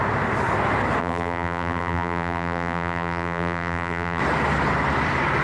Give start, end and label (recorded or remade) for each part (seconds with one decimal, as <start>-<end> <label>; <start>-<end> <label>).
0.0-1.0 recorded; 1.0-4.2 remade; 4.2-5.4 recorded